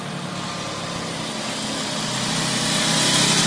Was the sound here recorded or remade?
recorded